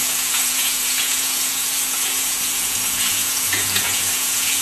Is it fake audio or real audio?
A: fake